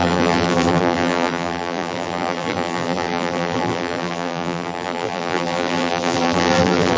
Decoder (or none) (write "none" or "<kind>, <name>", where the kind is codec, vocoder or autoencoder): vocoder, BigVGAN v2